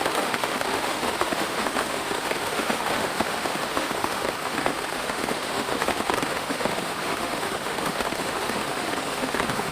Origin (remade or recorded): remade